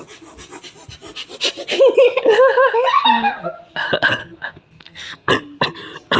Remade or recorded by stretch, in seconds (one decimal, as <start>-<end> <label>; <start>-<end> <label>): 0.0-4.2 recorded; 4.2-5.3 remade; 5.3-6.2 recorded